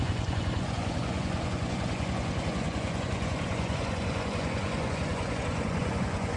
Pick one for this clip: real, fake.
fake